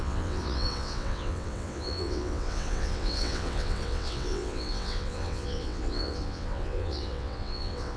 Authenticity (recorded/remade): remade